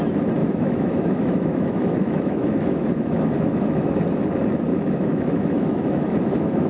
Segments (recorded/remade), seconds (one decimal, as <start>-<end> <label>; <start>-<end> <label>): 0.0-0.4 recorded; 0.4-4.0 remade; 4.0-4.7 recorded; 4.7-6.7 remade